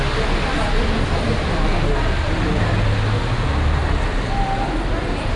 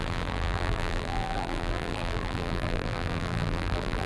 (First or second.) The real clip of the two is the first